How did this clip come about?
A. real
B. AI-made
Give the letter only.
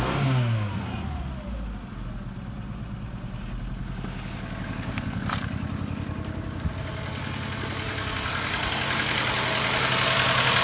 A